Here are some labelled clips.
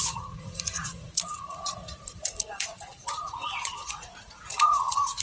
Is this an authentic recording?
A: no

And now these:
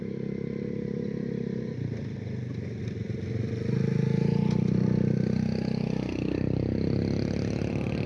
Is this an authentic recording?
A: yes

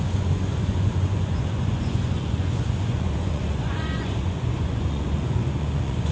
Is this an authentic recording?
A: no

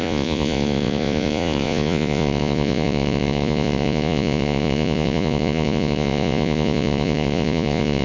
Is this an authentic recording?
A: no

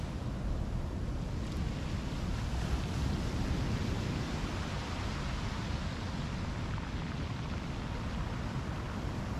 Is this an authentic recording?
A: yes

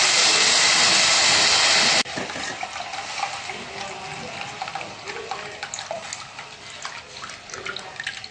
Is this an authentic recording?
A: yes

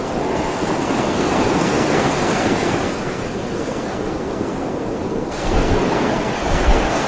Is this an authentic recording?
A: no